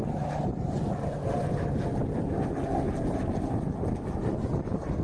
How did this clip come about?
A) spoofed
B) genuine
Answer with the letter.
B